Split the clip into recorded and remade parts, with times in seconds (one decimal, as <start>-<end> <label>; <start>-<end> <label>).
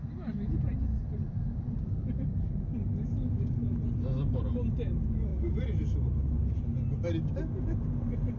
0.0-8.4 recorded